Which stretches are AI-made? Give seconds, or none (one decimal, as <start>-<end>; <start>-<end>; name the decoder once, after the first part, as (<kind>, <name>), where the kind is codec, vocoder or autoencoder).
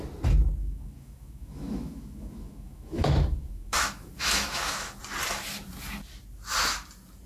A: 0.6-5.0 (autoencoder, DAC-VAE)